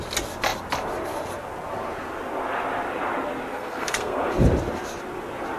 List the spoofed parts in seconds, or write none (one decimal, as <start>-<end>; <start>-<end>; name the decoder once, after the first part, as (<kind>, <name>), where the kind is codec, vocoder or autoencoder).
3.5-4.3 (codec, SNAC)

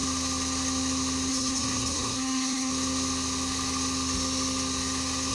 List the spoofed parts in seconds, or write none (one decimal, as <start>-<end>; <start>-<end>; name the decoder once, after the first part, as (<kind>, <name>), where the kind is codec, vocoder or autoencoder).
1.3-2.7 (codec, SNAC)